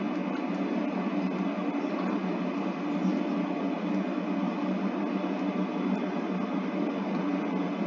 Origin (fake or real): real